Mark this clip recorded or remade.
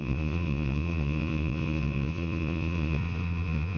remade